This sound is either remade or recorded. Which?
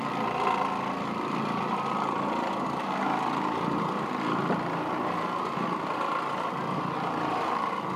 recorded